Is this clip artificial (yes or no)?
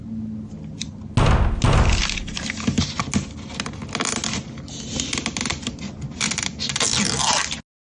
no